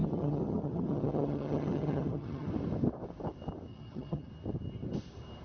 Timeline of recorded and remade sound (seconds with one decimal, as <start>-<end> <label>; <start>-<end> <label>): 0.0-2.5 remade; 2.5-3.7 recorded; 3.7-4.3 remade; 4.3-5.4 recorded